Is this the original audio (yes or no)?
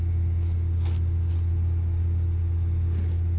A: yes